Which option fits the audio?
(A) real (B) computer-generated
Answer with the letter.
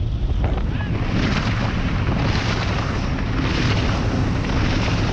A